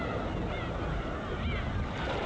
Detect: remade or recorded recorded